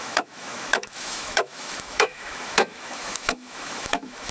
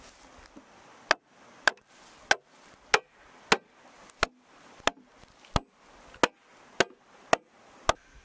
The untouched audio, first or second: second